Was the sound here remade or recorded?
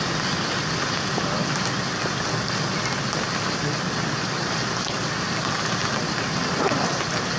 recorded